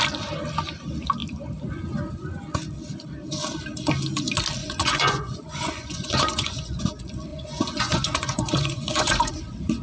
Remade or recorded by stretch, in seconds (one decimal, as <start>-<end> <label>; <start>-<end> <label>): 0.0-4.6 recorded; 4.6-6.8 remade; 6.8-7.3 recorded; 7.3-9.3 remade; 9.3-9.8 recorded